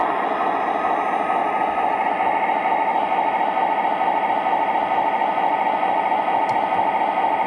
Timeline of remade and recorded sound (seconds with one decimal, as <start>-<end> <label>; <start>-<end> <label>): 0.0-0.6 remade; 0.6-1.4 recorded; 1.4-2.1 remade; 2.1-5.2 recorded; 5.2-6.4 remade; 6.4-7.5 recorded